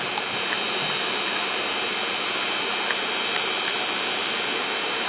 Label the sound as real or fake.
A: fake